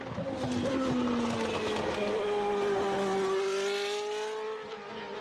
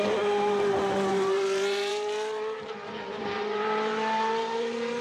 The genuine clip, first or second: first